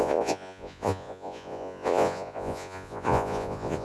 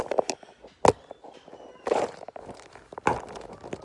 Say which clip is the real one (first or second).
second